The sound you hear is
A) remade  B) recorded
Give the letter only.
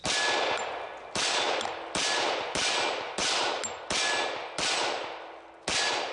B